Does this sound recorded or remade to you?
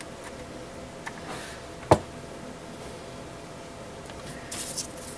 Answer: recorded